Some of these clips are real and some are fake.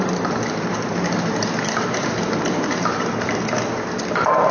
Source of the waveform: fake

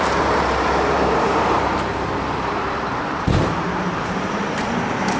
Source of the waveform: fake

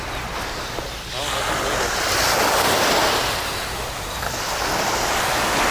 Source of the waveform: real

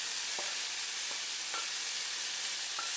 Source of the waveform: real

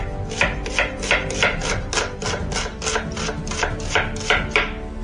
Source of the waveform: real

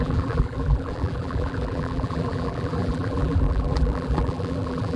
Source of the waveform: fake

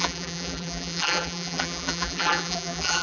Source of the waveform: fake